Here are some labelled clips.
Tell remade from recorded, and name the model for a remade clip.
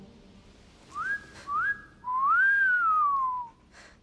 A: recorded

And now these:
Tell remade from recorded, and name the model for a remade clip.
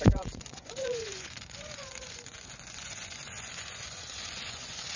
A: remade, vocoder, Vocos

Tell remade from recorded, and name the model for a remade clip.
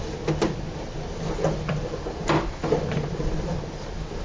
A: recorded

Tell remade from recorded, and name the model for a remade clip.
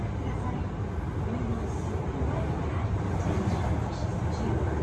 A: recorded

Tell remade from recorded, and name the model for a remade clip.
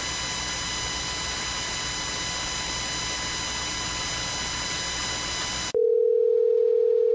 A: recorded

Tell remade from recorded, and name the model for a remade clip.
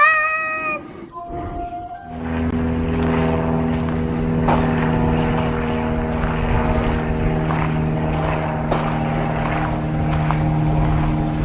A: recorded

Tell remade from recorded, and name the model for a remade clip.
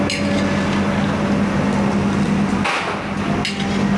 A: recorded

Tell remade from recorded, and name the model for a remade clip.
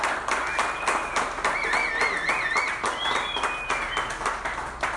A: recorded